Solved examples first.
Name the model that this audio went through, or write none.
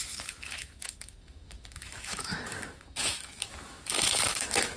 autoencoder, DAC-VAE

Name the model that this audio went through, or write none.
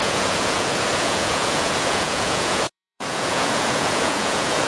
vocoder, Vocos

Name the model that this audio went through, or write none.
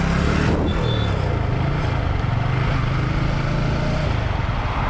none